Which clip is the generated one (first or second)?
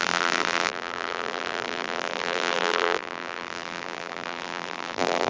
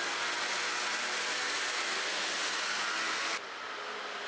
first